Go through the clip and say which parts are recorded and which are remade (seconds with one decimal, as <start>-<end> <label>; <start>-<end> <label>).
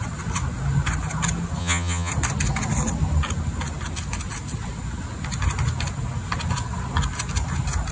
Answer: 0.0-1.6 recorded; 1.6-2.1 remade; 2.1-7.9 recorded